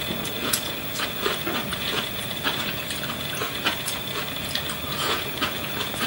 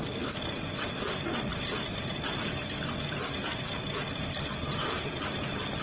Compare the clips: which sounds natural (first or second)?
second